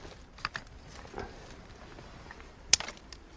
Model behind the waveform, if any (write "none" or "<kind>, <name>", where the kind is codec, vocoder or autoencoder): vocoder, BigVGAN v2